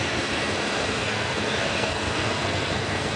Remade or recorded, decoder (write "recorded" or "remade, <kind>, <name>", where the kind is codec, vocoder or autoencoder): remade, codec, SNAC